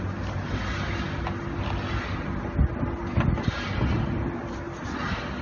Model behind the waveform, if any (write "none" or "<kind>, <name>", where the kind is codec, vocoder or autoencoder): none